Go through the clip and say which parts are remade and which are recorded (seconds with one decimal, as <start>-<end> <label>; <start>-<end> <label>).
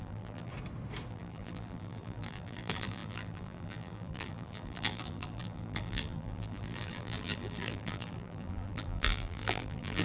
0.0-0.5 remade; 0.5-1.1 recorded; 1.1-10.0 remade